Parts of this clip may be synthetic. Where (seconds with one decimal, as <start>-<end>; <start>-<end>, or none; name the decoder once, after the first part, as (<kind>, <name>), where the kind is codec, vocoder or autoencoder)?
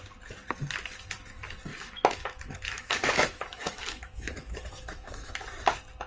1.7-5.3 (autoencoder, DAC-VAE)